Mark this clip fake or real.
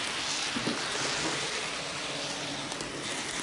real